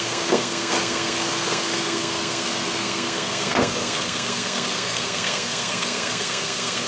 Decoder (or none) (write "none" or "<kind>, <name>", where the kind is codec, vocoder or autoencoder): codec, SNAC